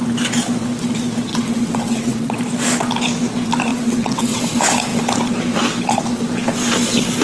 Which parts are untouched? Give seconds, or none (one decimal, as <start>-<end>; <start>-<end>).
0.0-1.3; 2.4-3.7; 4.4-7.2